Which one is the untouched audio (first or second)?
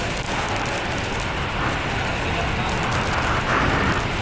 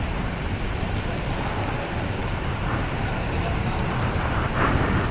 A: first